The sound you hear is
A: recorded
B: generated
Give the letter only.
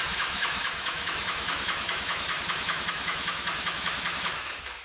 B